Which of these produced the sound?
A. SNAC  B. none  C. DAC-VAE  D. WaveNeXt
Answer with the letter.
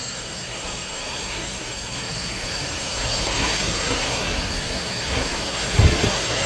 A